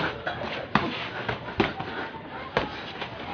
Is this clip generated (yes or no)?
no